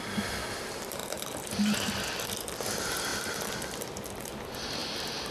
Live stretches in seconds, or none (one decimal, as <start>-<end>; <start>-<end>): 0.0-1.0; 2.0-5.3